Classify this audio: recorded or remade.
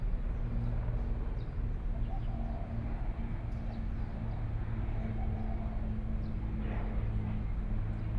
recorded